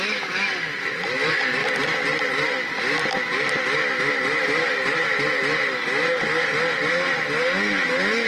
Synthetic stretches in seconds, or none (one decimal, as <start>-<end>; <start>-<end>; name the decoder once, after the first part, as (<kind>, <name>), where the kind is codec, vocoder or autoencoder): none